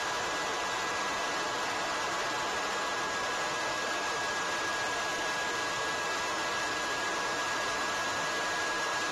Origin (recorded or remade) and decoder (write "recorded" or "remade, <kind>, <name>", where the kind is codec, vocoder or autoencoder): recorded